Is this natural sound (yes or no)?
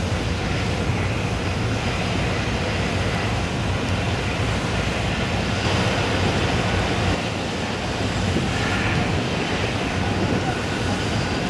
yes